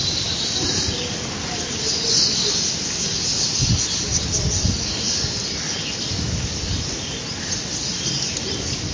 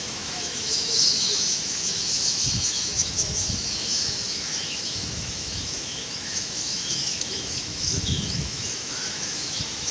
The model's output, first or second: second